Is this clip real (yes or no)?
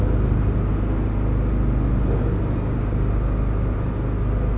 yes